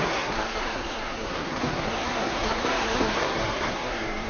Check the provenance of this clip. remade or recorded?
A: remade